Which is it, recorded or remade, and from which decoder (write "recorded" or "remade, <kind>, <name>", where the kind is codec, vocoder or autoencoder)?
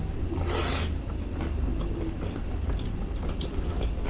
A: recorded